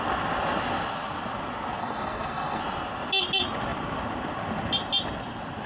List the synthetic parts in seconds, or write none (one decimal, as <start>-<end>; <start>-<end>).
1.8-2.6